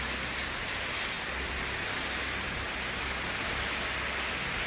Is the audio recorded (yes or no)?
yes